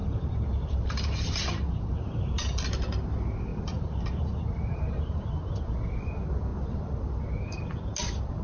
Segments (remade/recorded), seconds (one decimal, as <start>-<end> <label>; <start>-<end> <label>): 0.0-2.3 remade; 2.3-3.5 recorded; 3.5-5.6 remade; 5.6-8.4 recorded